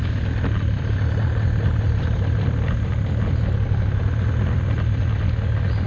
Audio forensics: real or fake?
real